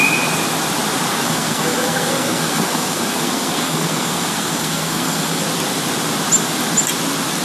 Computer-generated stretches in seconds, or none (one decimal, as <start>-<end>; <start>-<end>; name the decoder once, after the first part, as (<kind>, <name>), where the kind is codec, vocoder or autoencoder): 1.1-5.4 (codec, SNAC)